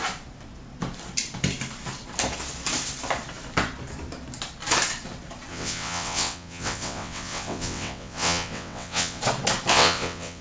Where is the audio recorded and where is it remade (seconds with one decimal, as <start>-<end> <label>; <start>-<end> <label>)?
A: 0.0-5.5 recorded; 5.5-9.2 remade; 9.2-9.7 recorded; 9.7-10.4 remade